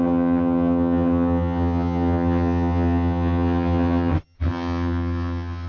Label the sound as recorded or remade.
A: remade